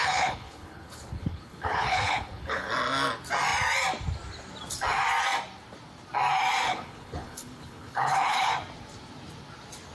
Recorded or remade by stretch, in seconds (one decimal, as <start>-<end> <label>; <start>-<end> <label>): 0.0-2.7 remade; 2.7-6.7 recorded; 6.7-8.5 remade; 8.5-9.9 recorded

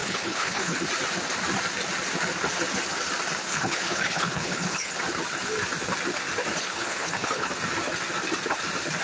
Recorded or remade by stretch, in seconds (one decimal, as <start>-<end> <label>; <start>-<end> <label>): 0.0-0.8 remade; 0.8-3.5 recorded; 3.5-4.9 remade; 4.9-6.6 recorded; 6.6-7.5 remade; 7.5-9.0 recorded

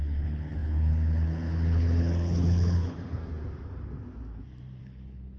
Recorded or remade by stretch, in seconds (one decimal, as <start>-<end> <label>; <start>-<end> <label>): 0.0-3.2 remade; 3.2-4.8 recorded; 4.8-5.4 remade

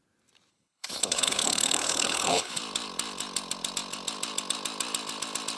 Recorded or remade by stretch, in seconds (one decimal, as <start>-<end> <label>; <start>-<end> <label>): 0.0-0.5 recorded; 0.5-2.6 remade; 2.6-5.6 recorded

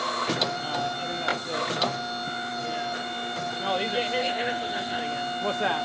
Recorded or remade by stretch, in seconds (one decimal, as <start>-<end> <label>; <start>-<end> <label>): 0.0-4.2 recorded; 4.2-5.0 remade; 5.0-5.8 recorded

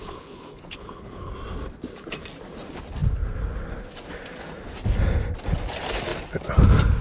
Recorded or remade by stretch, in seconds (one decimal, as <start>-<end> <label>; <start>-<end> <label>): 0.0-1.3 remade; 1.3-7.0 recorded

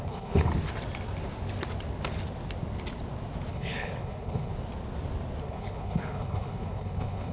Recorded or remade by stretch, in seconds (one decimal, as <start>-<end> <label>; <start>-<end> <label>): 0.0-0.5 remade; 0.5-3.5 recorded; 3.5-4.5 remade; 4.5-5.4 recorded; 5.4-7.3 remade

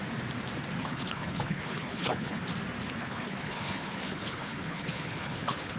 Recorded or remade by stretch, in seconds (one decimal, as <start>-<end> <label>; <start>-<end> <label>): 0.0-0.8 recorded; 0.8-2.4 remade; 2.4-3.0 recorded; 3.0-5.8 remade